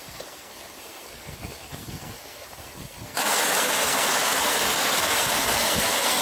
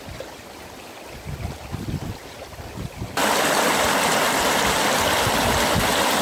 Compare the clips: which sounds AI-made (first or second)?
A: first